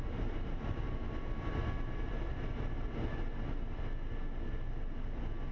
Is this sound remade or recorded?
recorded